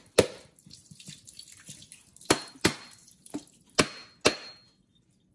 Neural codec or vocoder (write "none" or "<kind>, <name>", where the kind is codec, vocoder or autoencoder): none